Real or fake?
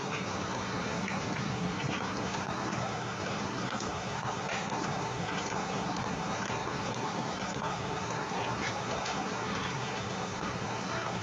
fake